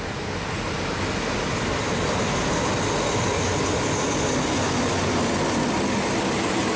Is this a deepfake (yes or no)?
no